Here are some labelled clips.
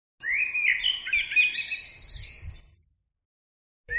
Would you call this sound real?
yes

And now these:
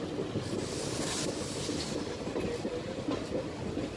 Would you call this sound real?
yes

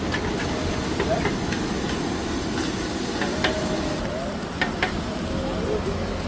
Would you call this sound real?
yes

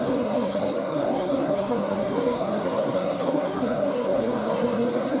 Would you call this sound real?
no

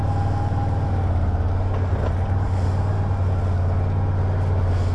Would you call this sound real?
yes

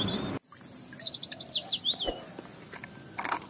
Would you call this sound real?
yes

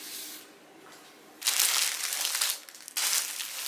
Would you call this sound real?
yes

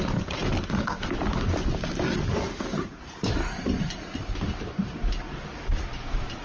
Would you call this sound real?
yes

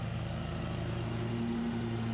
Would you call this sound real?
yes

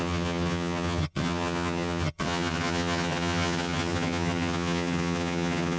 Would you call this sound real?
no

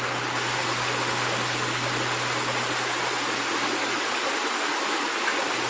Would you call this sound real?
yes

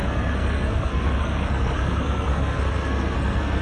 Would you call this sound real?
no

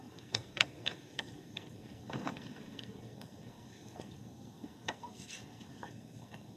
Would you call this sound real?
no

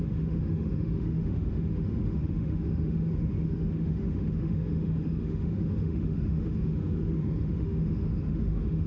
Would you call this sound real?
no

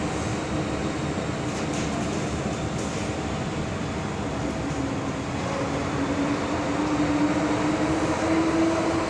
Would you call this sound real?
yes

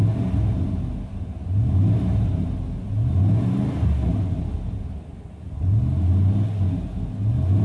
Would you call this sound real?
yes